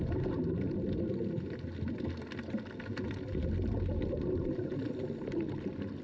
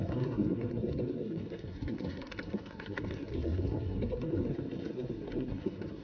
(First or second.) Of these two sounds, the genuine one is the first